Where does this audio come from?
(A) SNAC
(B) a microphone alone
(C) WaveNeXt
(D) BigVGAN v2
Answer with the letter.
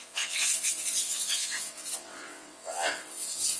C